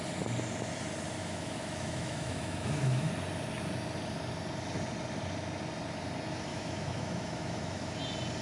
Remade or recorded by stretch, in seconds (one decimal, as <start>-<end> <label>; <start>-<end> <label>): 0.0-1.2 recorded; 1.2-3.1 remade; 3.1-6.5 recorded; 6.5-8.0 remade; 8.0-8.4 recorded